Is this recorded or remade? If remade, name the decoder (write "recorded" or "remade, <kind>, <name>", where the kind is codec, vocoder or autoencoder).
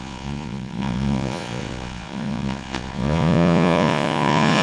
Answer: remade, vocoder, Vocos